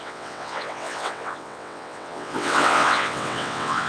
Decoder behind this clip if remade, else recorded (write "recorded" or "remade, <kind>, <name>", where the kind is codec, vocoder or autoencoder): remade, vocoder, WaveNeXt